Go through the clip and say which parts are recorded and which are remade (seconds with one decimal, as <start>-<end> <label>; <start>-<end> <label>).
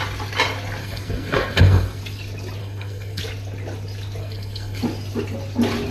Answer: 0.0-0.8 recorded; 0.8-2.0 remade; 2.0-2.6 recorded; 2.6-3.2 remade; 3.2-4.2 recorded; 4.2-4.8 remade; 4.8-5.9 recorded